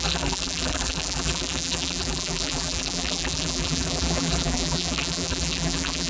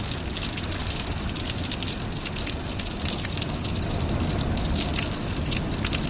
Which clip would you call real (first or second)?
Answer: second